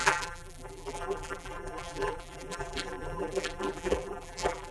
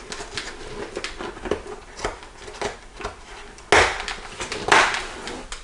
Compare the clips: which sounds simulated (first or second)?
first